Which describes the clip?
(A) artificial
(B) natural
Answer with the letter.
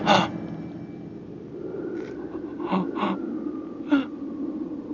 B